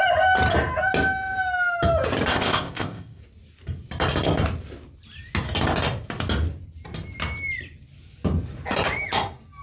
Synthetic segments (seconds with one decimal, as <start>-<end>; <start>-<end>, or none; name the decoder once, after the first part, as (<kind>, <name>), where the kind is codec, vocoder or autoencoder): 2.3-3.2 (codec, ZipCodec)